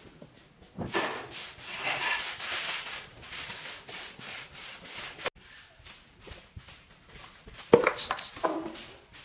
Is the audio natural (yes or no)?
yes